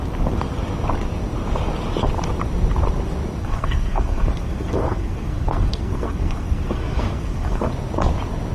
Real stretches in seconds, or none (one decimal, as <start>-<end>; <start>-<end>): 0.0-3.4; 7.7-8.5